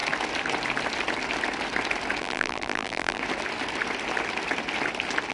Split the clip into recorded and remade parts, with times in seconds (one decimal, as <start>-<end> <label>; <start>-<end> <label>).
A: 0.0-2.2 recorded; 2.2-3.2 remade; 3.2-5.3 recorded

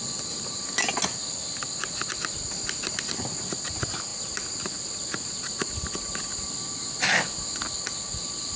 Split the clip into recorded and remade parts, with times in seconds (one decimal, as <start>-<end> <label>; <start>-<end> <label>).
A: 0.0-8.6 recorded

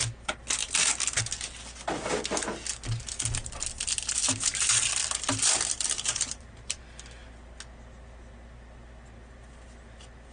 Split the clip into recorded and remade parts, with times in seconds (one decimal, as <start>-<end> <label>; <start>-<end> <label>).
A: 0.0-0.6 recorded; 0.6-1.2 remade; 1.2-4.2 recorded; 4.2-6.8 remade; 6.8-10.3 recorded

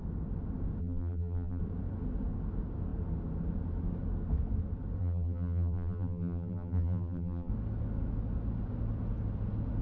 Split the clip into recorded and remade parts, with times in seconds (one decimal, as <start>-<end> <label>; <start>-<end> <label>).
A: 0.0-0.8 recorded; 0.8-1.6 remade; 1.6-5.0 recorded; 5.0-7.5 remade; 7.5-9.8 recorded

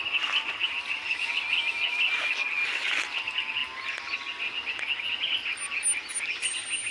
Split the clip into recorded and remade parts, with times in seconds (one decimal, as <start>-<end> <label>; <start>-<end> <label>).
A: 0.0-6.9 recorded